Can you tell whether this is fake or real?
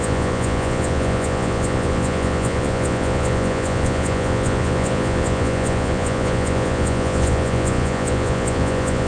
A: fake